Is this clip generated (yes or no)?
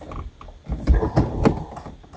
no